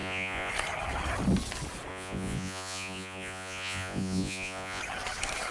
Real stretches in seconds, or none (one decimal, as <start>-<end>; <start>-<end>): 0.5-1.9; 4.8-5.5